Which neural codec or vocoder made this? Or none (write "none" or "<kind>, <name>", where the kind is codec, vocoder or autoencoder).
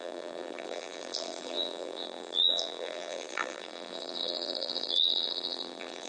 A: vocoder, BigVGAN v2